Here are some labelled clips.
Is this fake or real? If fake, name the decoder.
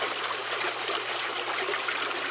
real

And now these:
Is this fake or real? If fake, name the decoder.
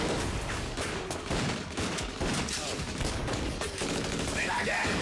fake, codec, DAC